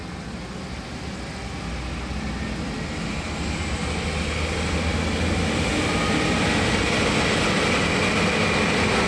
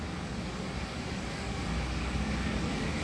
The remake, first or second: second